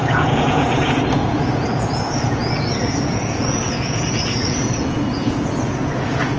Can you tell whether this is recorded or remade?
remade